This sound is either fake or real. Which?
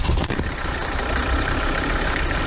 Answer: fake